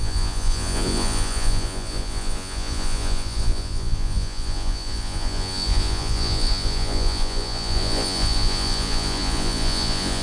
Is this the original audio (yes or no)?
no